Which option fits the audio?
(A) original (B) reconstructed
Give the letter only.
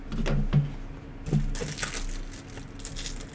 A